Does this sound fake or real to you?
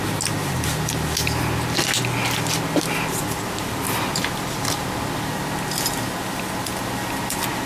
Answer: real